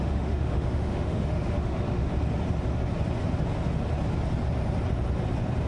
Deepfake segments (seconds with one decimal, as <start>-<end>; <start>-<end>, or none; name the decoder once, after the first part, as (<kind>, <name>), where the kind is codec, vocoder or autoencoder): 0.0-2.1 (autoencoder, DAC-VAE)